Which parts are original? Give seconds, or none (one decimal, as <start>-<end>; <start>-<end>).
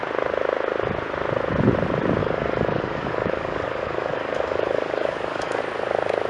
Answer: 0.0-2.2; 5.6-6.3